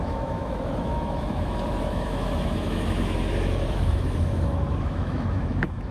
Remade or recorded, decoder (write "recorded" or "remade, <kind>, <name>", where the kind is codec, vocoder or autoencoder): remade, autoencoder, DAC-VAE